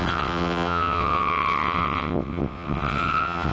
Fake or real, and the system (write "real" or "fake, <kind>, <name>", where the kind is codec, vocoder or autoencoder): fake, vocoder, WaveNeXt